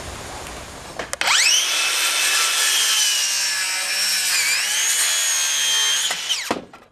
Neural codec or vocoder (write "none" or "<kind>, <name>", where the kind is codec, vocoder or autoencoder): none